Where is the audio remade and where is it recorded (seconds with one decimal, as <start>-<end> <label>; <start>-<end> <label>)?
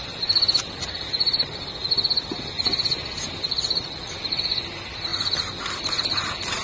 0.0-6.6 recorded